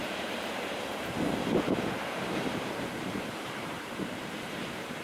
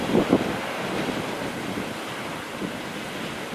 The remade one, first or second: first